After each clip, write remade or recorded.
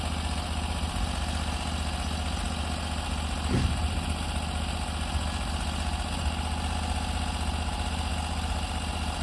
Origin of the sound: recorded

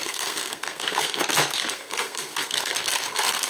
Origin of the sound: remade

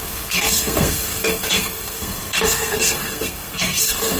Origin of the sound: remade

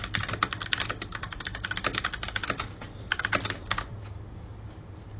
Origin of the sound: recorded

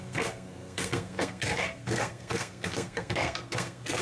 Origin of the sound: remade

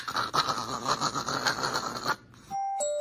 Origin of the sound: recorded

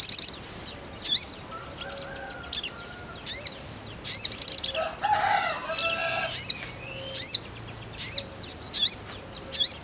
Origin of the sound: recorded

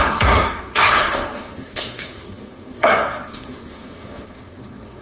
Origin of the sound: remade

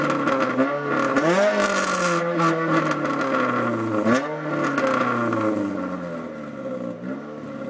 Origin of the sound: recorded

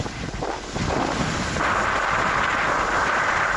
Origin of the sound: recorded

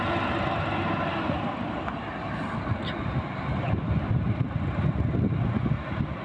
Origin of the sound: recorded